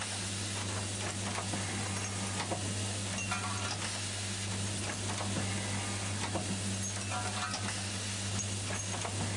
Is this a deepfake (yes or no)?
no